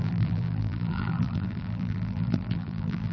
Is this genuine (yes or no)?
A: no